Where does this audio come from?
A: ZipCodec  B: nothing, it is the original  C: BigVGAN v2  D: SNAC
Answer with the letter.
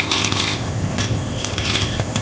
A